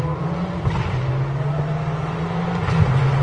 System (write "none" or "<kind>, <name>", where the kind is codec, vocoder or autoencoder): none